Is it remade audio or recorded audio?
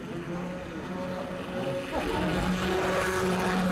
recorded